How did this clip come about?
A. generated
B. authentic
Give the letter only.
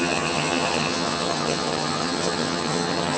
A